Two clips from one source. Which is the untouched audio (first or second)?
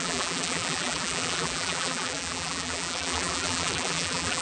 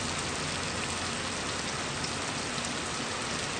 second